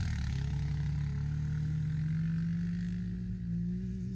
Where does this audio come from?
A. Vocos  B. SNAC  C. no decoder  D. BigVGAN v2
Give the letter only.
C